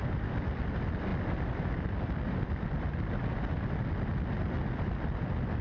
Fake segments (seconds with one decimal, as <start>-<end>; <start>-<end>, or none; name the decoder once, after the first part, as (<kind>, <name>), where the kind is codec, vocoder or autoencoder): none